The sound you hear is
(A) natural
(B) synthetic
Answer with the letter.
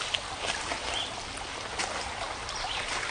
A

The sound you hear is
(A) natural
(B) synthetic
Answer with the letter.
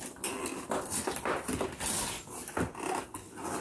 A